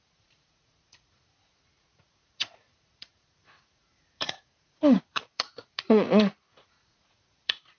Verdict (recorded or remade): remade